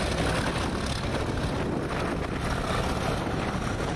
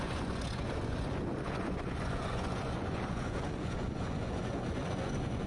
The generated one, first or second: second